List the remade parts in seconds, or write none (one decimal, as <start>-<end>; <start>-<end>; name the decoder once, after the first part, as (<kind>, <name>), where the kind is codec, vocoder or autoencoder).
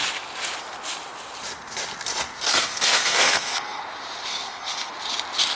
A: 2.5-3.8 (codec, SNAC); 4.3-4.9